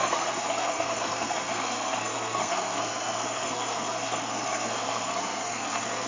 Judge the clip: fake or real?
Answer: fake